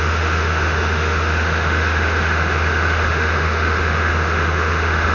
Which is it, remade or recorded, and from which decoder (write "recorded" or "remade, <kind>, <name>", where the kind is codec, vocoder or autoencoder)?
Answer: remade, autoencoder, DAC-VAE